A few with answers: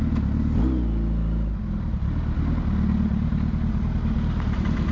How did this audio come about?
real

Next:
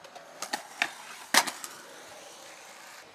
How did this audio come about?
real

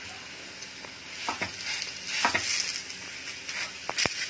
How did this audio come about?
real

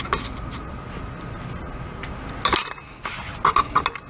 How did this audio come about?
real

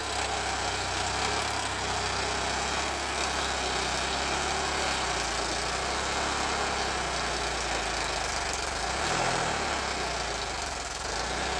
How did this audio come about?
real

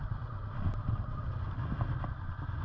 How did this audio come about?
real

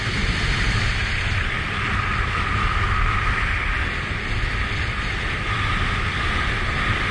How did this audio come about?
real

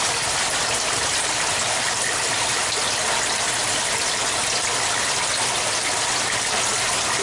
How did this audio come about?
real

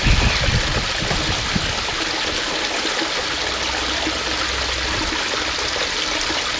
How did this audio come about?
real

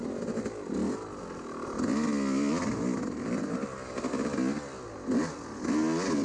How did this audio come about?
real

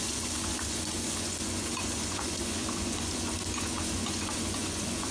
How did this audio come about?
fake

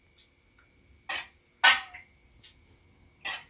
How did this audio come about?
real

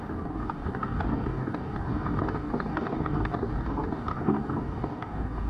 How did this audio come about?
fake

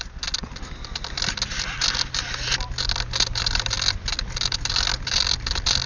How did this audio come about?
real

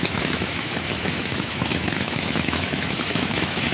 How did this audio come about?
fake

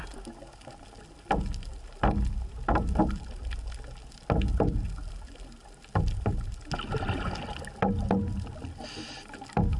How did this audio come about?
real